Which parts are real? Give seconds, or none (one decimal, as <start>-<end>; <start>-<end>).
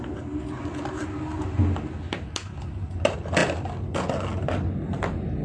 0.0-5.4